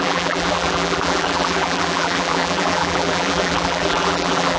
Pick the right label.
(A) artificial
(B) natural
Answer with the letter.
A